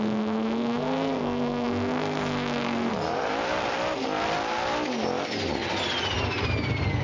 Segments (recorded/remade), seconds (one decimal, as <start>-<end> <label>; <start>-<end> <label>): 0.0-2.9 remade; 2.9-7.0 recorded